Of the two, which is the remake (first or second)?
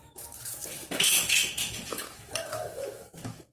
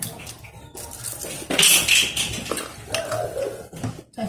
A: first